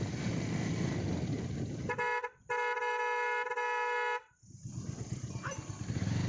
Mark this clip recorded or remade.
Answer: recorded